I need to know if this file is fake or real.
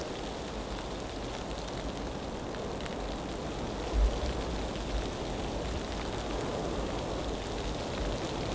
real